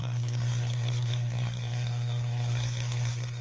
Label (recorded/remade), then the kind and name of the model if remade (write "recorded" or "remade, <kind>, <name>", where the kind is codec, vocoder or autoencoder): remade, codec, SNAC